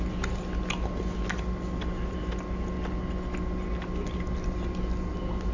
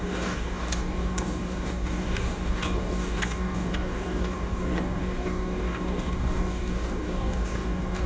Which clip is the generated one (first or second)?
second